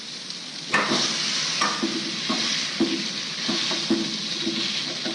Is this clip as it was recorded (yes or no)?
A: yes